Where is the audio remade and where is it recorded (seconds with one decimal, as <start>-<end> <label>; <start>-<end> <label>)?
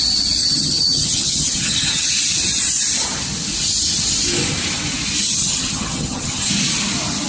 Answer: 0.0-0.4 recorded; 0.4-2.1 remade; 2.1-5.4 recorded; 5.4-6.5 remade; 6.5-7.3 recorded